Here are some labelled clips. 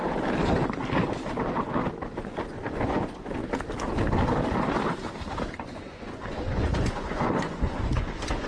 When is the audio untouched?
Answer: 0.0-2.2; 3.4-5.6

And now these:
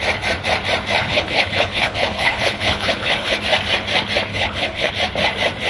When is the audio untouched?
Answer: 0.0-1.0; 3.4-4.3; 4.9-5.7

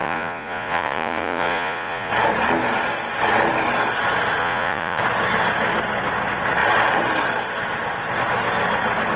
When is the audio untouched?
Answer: 2.1-4.4; 5.0-9.2

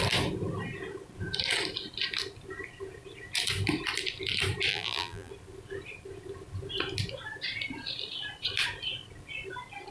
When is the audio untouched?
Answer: 0.0-4.7; 5.3-9.9

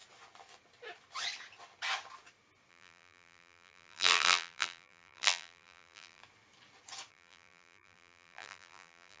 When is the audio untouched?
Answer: 0.0-2.7; 6.2-7.1